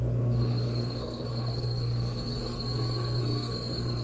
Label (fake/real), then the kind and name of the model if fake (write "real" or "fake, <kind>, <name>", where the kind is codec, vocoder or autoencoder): fake, codec, SNAC